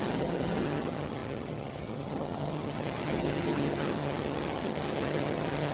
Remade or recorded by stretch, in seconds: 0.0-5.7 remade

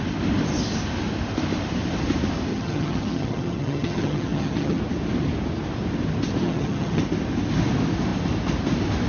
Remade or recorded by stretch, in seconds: 0.0-2.5 recorded; 2.5-4.8 remade; 4.8-6.4 recorded; 6.4-7.0 remade; 7.0-9.1 recorded

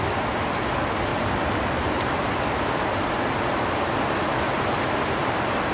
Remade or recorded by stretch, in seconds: 0.0-5.7 recorded